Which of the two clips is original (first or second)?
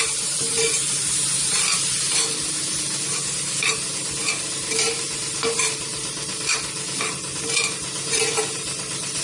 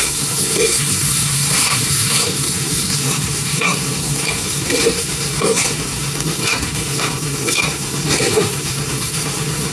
first